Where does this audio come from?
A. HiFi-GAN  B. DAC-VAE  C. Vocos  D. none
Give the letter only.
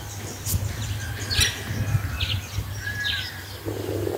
D